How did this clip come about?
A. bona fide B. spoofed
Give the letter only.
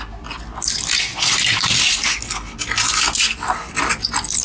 A